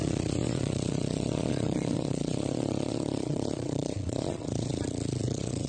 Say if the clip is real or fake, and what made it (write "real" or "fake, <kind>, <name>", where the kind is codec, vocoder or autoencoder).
fake, vocoder, Vocos